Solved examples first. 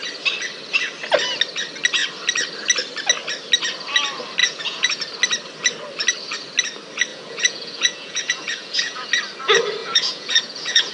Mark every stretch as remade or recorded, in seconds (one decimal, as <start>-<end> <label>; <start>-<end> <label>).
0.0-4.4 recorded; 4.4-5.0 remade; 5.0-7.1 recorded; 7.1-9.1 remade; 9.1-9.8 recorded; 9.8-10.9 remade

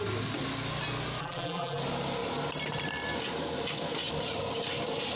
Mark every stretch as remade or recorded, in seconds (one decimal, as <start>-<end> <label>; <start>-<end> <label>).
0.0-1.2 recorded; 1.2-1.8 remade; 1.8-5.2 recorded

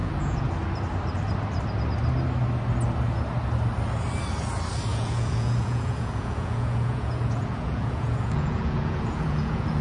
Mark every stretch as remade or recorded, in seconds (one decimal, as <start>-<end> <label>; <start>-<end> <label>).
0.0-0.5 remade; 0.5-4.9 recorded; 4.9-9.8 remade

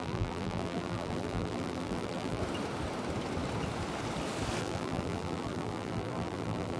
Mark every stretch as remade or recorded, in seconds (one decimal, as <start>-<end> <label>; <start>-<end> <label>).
0.0-2.4 remade; 2.4-4.6 recorded; 4.6-6.8 remade